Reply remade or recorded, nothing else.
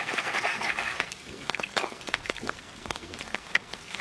remade